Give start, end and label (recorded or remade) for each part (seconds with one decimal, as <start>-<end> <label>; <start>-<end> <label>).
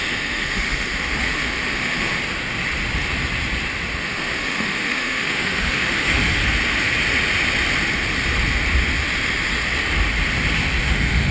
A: 0.0-2.2 remade; 2.2-3.9 recorded; 3.9-6.4 remade; 6.4-10.8 recorded; 10.8-11.3 remade